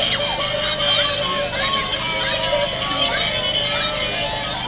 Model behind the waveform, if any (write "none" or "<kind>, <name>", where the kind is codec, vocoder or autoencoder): none